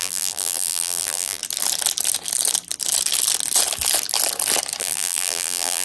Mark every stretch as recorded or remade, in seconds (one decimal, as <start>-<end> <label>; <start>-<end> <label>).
0.0-1.4 remade; 1.4-4.8 recorded; 4.8-5.8 remade